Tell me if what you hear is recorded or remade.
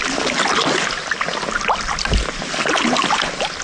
recorded